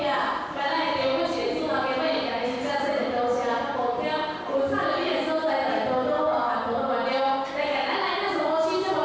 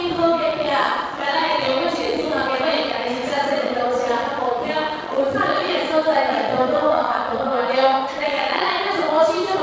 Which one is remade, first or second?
second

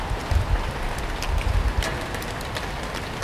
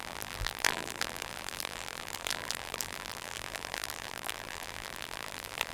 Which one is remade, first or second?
second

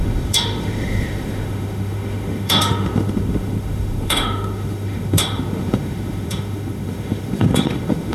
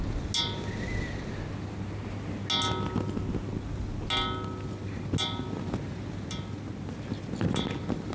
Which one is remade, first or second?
first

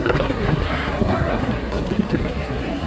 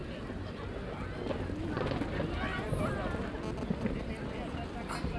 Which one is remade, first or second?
first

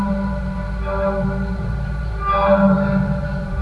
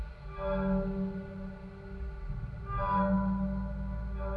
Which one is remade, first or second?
first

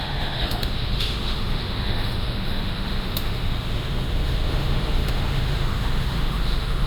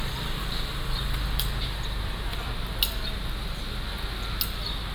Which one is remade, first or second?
first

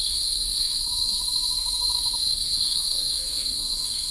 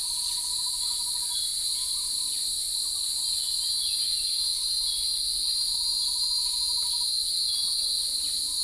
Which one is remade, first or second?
first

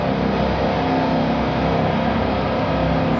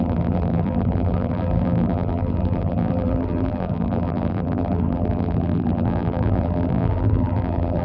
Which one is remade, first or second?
second